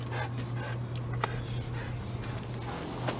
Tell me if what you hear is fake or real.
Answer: real